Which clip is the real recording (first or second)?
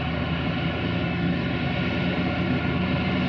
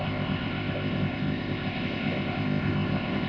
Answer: first